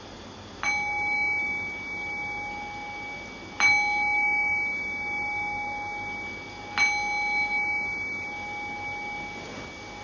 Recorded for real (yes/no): yes